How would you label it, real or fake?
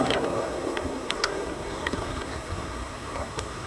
fake